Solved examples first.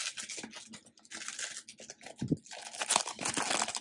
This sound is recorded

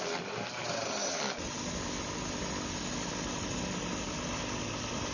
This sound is recorded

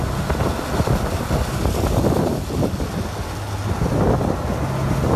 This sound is recorded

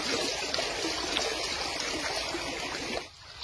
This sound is recorded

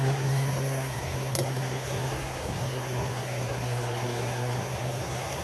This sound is remade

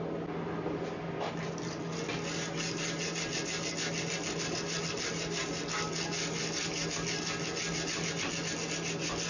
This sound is recorded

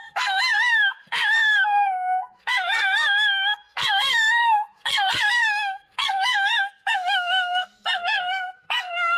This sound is remade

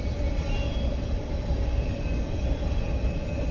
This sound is recorded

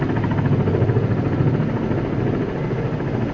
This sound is recorded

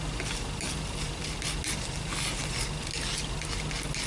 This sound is recorded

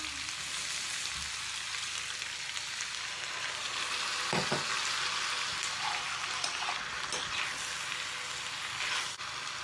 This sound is recorded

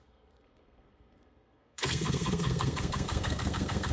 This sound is remade